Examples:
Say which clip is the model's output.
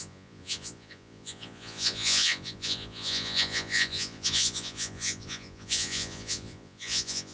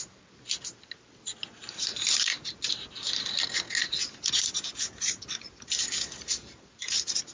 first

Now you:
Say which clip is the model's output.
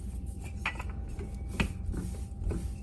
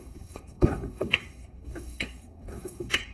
second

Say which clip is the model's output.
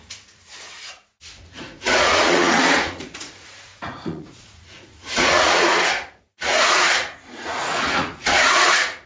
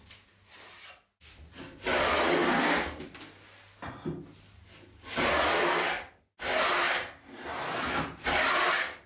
first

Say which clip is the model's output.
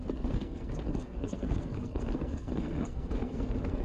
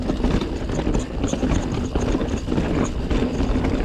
first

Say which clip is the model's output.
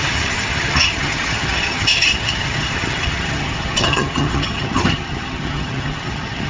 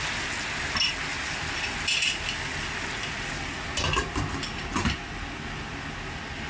first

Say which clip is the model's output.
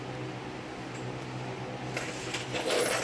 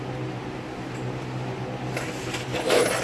first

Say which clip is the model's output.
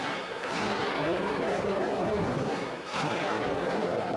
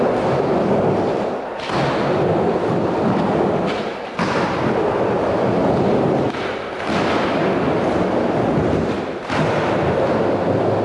first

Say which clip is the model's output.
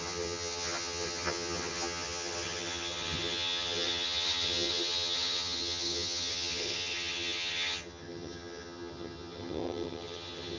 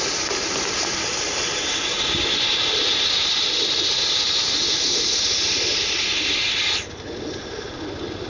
first